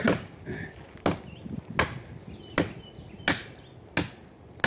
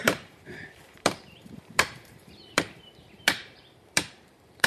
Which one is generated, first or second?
second